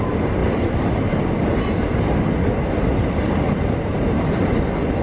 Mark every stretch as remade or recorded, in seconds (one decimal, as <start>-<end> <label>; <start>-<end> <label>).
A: 0.0-5.0 recorded